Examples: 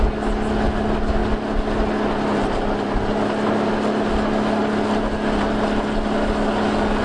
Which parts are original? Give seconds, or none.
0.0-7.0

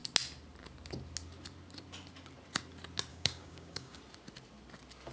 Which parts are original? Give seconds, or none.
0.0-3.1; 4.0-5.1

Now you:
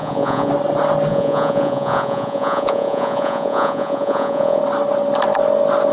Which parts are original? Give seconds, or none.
0.5-1.1; 4.6-5.9